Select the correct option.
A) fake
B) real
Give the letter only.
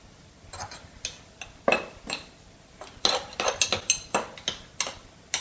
B